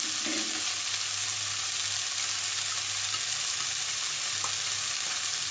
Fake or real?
real